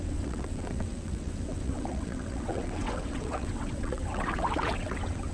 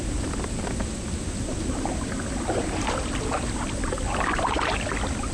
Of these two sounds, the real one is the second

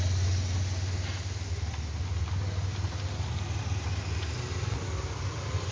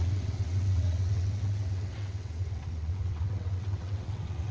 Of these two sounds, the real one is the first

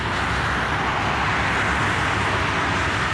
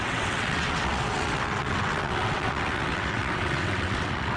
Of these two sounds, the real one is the first